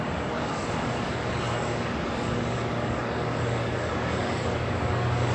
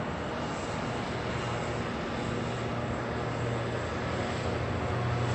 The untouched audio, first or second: second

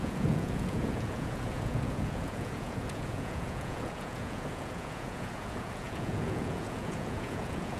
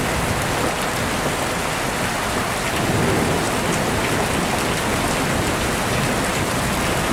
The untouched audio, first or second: second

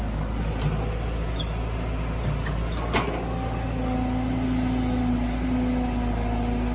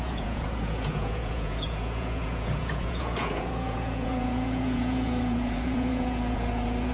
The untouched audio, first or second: first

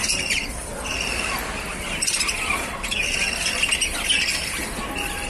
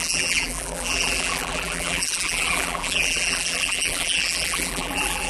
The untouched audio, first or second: first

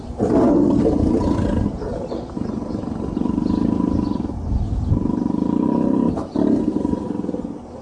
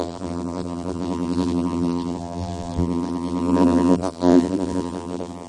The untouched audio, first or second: first